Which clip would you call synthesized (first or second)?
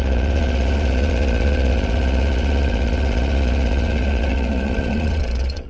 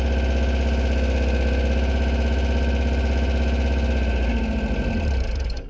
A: first